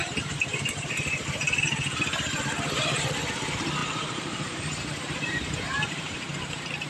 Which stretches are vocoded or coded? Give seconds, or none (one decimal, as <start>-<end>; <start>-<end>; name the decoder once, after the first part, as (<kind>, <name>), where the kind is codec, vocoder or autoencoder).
0.0-6.9 (vocoder, BigVGAN v2)